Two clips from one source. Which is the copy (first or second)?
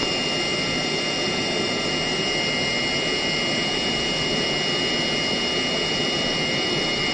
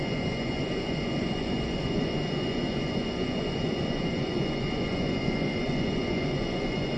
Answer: second